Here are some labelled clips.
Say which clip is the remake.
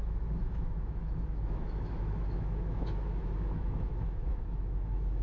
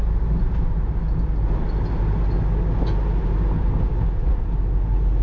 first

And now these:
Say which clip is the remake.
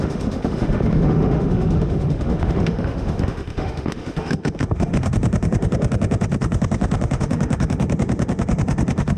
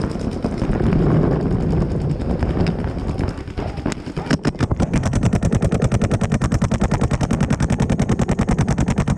first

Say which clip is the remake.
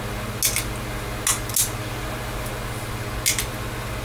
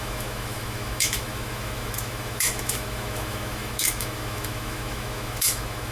second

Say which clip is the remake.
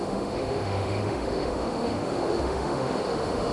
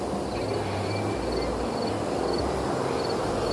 first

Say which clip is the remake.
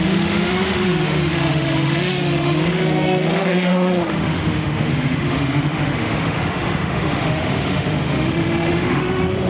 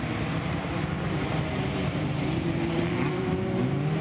first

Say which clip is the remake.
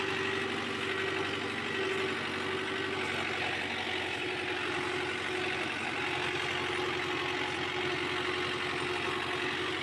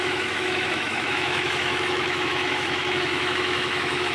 second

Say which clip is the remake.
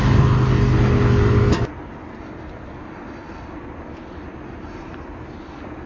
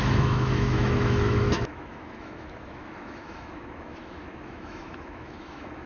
second